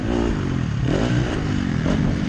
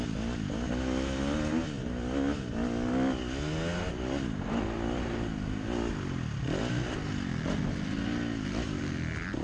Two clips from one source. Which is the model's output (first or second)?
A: first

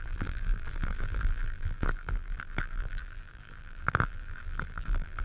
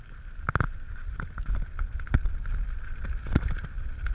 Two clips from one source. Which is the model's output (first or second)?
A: first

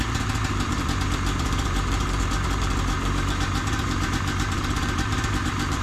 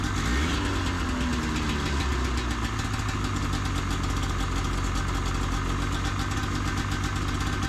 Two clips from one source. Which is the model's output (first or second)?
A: first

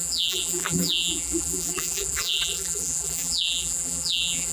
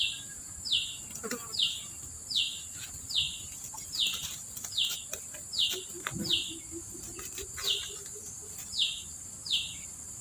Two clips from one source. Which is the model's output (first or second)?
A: first